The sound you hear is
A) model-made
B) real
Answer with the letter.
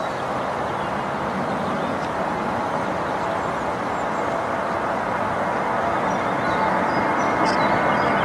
B